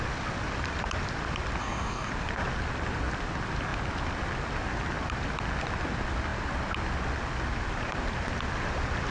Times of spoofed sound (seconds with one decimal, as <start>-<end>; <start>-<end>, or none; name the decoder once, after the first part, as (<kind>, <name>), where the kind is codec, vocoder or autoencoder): 1.6-2.1 (codec, DAC)